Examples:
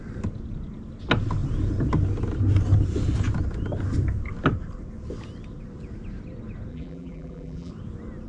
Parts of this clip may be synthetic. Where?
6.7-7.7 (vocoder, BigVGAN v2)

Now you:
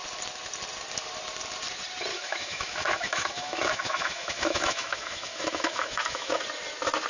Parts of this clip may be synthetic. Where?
2.1-6.4 (autoencoder, DAC-VAE)

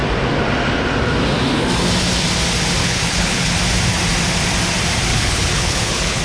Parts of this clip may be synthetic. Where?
2.8-3.5 (codec, HILCodec); 5.1-6.2

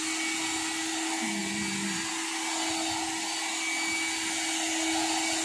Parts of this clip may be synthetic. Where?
none